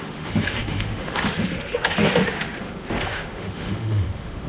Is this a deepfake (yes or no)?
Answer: yes